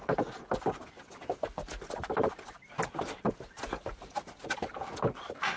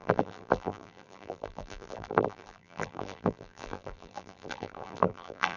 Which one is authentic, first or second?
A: first